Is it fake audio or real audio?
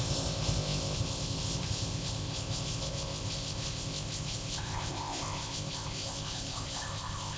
fake